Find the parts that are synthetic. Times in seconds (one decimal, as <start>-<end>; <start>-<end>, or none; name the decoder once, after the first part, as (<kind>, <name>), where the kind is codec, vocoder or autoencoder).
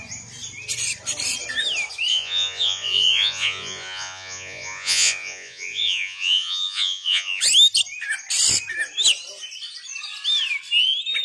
2.1-7.4 (vocoder, Vocos)